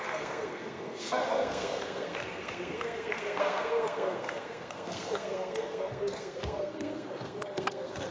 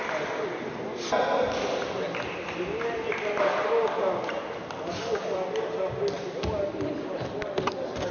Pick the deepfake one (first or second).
first